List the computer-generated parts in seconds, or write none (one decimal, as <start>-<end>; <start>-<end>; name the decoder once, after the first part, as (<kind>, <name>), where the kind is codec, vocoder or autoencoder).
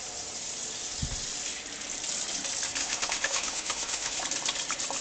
2.8-4.2 (autoencoder, DAC-VAE)